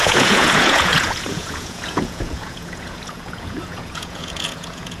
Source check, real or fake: fake